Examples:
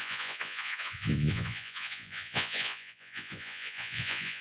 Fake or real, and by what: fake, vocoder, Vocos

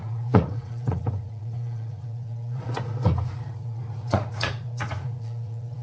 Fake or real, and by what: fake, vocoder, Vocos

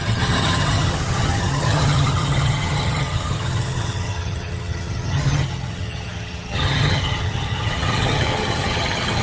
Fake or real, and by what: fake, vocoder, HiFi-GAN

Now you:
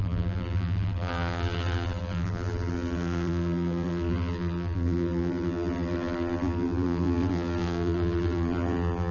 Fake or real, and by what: fake, vocoder, BigVGAN v2